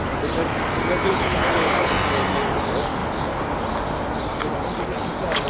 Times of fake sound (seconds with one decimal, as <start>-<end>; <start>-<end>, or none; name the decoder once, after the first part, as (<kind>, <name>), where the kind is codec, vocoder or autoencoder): 1.1-1.9 (codec, HILCodec)